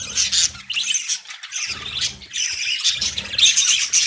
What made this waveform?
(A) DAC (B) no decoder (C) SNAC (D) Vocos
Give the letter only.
B